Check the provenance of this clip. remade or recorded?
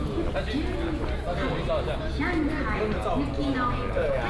recorded